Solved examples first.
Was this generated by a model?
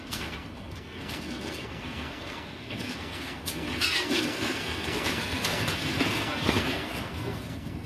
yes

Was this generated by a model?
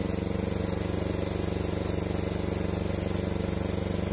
no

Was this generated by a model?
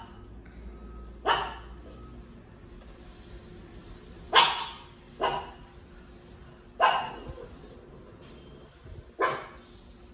no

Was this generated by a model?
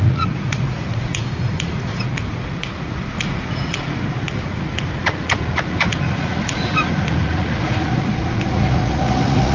yes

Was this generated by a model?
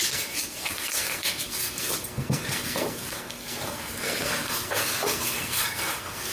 yes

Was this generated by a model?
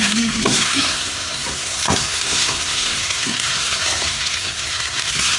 yes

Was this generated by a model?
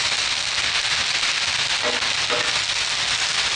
no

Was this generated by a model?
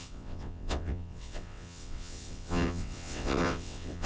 yes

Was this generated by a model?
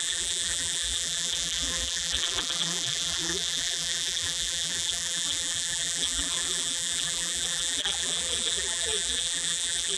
yes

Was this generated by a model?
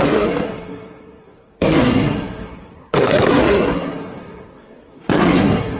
yes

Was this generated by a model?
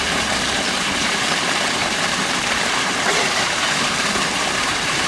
yes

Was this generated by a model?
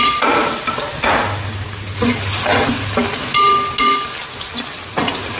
no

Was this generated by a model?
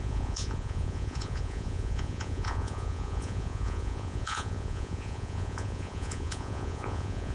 yes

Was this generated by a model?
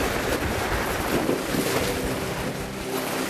no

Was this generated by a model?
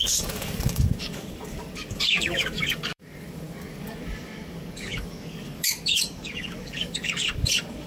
yes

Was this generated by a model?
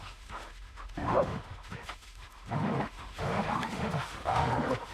yes